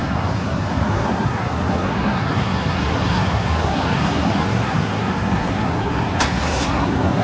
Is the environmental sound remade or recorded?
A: remade